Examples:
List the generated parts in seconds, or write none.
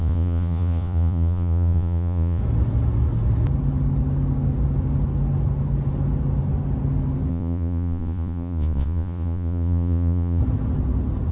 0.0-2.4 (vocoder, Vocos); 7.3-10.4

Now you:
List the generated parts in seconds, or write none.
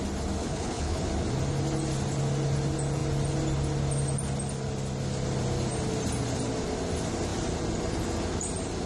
0.4-1.1 (codec, HILCodec)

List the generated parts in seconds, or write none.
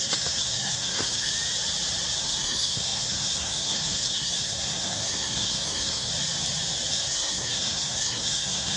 0.0-1.3 (codec, SNAC); 2.2-6.1; 6.9-8.8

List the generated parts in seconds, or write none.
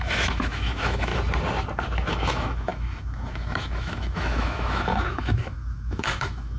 0.0-1.1 (autoencoder, DAC-VAE); 2.1-6.6